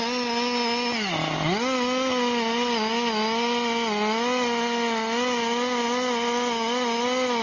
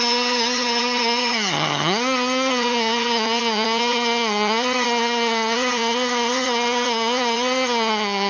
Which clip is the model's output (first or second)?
second